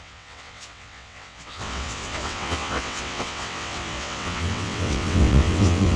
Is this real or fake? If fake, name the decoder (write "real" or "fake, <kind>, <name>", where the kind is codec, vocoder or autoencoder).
fake, vocoder, WaveNeXt